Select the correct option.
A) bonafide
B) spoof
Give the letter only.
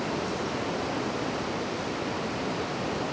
A